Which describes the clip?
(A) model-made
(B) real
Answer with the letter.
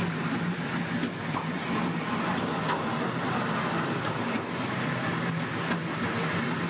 B